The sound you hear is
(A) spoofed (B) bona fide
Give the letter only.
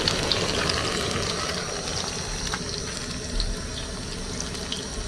B